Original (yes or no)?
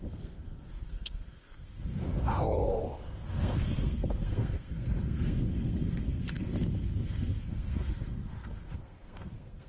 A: no